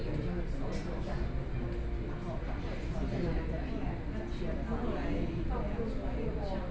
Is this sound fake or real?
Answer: real